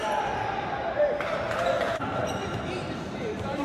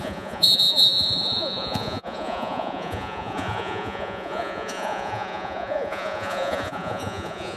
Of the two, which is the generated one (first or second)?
second